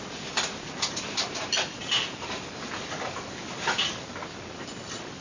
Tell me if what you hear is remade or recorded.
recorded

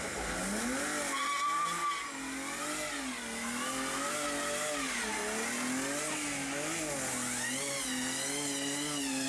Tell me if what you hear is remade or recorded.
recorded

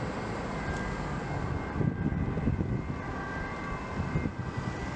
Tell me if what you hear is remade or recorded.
recorded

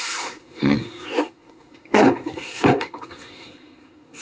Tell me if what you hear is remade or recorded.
remade